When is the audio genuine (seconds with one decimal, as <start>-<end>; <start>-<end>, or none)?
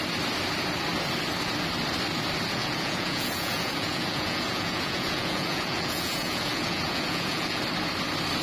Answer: 0.0-2.6; 7.6-8.4